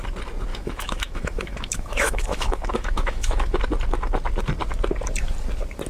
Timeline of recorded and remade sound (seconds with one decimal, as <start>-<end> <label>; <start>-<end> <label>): 0.0-0.5 recorded; 0.5-3.6 remade; 3.6-5.9 recorded